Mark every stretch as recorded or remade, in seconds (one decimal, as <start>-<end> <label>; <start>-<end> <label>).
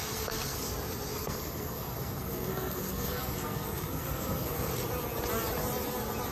0.0-0.7 remade; 0.7-1.1 recorded; 1.1-4.7 remade; 4.7-6.3 recorded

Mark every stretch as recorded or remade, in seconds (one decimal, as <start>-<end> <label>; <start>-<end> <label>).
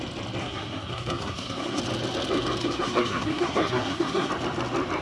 0.0-0.4 recorded; 0.4-1.8 remade; 1.8-2.6 recorded; 2.6-4.3 remade; 4.3-5.0 recorded